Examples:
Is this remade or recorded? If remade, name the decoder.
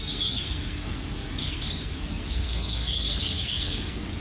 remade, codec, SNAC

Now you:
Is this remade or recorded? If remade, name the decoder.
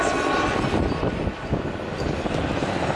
recorded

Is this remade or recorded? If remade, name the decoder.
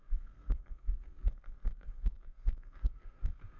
remade, codec, SNAC